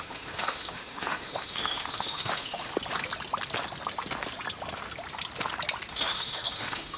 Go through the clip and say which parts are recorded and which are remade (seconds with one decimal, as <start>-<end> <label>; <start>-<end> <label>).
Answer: 0.0-2.7 remade; 2.7-5.9 recorded; 5.9-7.0 remade

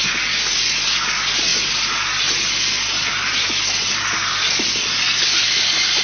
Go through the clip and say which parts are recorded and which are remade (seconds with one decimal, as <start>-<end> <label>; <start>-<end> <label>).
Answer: 0.0-6.0 recorded